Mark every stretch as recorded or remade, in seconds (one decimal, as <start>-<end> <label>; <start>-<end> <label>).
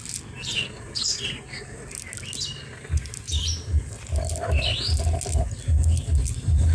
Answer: 0.0-6.7 recorded